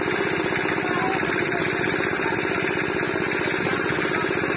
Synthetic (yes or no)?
no